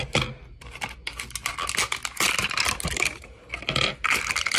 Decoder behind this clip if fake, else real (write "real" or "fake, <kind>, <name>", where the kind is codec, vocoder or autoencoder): real